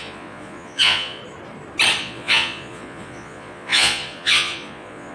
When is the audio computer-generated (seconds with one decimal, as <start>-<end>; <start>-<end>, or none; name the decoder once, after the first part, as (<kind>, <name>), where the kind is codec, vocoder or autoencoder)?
0.0-1.2 (vocoder, Vocos); 2.0-5.1